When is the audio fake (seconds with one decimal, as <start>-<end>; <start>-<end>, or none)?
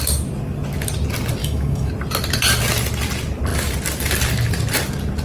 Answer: 1.4-1.9